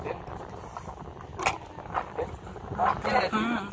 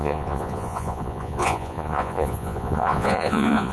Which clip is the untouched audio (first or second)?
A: first